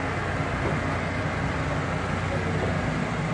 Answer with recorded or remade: recorded